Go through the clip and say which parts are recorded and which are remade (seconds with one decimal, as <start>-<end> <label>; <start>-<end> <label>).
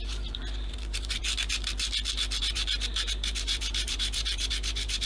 0.0-1.2 remade; 1.2-2.4 recorded; 2.4-5.1 remade